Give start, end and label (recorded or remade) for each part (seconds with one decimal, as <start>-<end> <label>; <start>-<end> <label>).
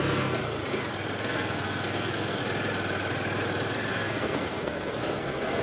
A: 0.0-0.4 remade; 0.4-1.2 recorded; 1.2-2.4 remade; 2.4-3.9 recorded; 3.9-5.6 remade